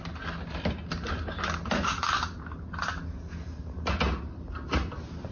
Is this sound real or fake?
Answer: real